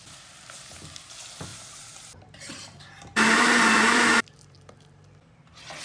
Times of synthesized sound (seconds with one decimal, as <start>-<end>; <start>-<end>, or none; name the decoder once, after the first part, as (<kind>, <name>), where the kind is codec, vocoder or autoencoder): 1.5-5.0 (vocoder, BigVGAN v2)